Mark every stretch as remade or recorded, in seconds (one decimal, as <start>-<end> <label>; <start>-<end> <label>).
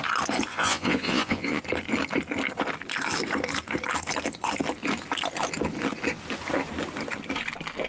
0.0-0.5 recorded; 0.5-1.6 remade; 1.6-7.9 recorded